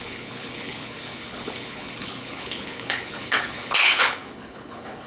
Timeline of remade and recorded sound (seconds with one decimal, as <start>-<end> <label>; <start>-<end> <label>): 0.0-5.1 remade